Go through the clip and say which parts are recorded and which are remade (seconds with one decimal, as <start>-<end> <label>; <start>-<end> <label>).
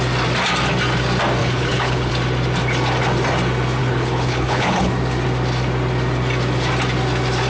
0.0-1.4 recorded; 1.4-2.1 remade; 2.1-3.8 recorded; 3.8-4.9 remade; 4.9-7.5 recorded